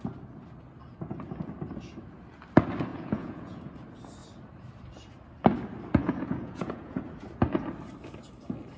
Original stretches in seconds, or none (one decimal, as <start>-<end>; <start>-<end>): 0.0-2.9; 3.7-6.0; 7.0-8.8